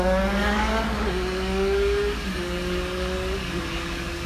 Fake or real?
fake